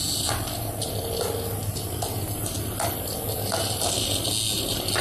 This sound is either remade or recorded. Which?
recorded